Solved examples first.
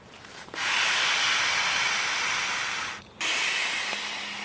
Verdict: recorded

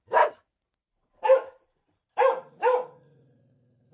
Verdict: remade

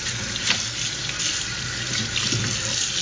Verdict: recorded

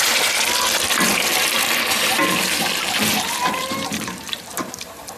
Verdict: recorded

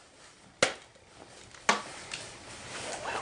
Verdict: recorded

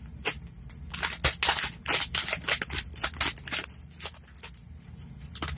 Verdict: recorded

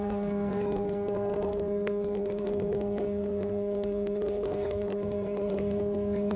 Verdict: remade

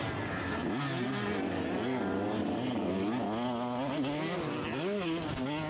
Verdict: recorded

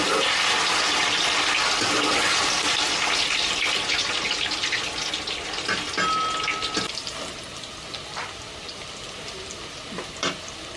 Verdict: recorded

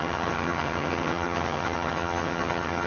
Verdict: remade